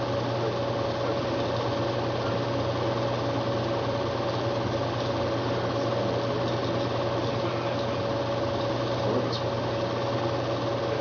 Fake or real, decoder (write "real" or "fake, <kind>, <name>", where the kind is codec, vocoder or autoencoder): real